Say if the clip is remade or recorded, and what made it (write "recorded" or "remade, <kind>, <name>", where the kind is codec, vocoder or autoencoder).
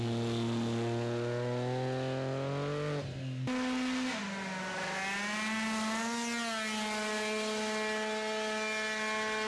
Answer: recorded